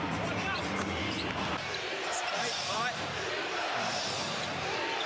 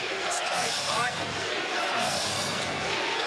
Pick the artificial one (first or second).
second